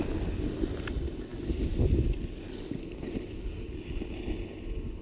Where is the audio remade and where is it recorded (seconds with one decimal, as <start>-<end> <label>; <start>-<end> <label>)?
0.0-5.0 recorded